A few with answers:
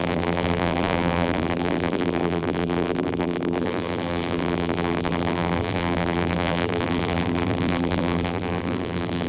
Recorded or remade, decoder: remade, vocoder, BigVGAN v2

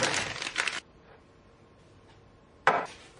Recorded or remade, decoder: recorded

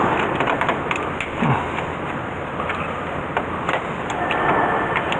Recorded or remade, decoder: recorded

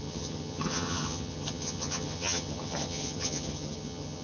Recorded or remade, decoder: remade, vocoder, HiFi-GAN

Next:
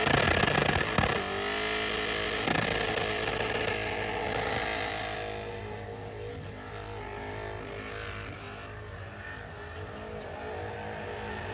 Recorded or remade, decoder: recorded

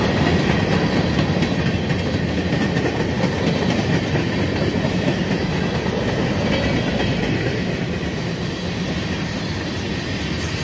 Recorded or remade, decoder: recorded